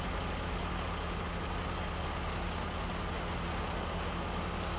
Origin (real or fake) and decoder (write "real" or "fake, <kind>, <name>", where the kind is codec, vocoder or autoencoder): real